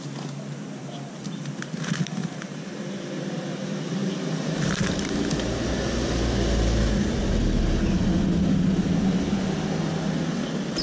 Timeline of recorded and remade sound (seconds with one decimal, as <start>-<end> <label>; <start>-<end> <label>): 0.0-0.8 recorded; 0.8-1.4 remade; 1.4-2.2 recorded; 2.2-5.1 remade; 5.1-10.8 recorded